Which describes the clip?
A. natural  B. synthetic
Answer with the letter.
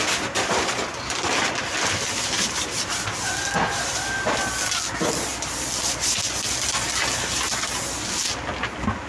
A